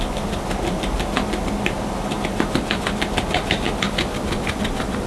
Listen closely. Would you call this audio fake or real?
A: real